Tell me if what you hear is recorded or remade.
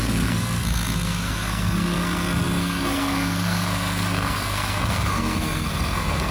remade